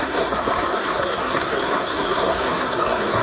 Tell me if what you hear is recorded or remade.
remade